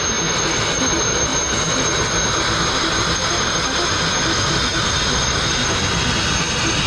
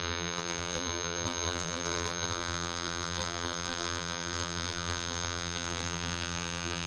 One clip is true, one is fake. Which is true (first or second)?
first